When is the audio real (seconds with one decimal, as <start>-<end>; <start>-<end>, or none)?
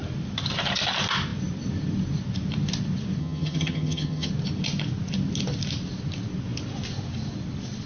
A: 0.0-3.2; 4.3-7.9